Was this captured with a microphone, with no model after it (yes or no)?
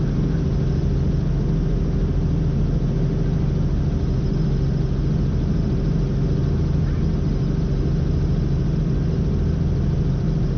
yes